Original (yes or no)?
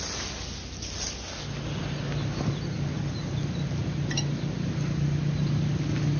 yes